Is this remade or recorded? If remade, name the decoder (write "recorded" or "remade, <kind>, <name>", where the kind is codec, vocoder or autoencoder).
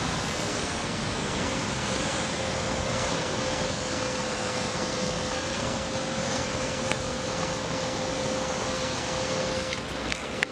remade, codec, SNAC